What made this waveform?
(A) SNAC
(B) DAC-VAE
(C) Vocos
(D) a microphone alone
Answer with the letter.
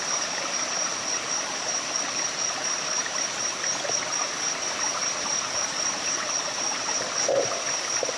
D